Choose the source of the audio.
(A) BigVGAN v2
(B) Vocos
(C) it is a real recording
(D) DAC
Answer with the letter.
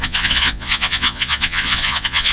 B